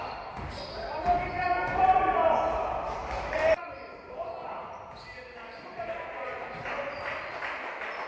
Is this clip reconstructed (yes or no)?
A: no